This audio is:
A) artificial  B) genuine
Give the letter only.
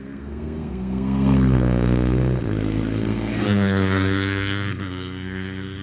A